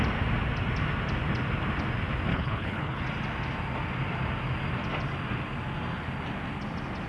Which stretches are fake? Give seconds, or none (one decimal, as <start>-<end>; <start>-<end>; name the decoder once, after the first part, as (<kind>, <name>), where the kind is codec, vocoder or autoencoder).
2.3-3.0 (codec, HILCodec)